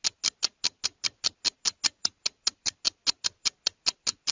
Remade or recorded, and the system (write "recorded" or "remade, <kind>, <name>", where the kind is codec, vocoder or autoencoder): recorded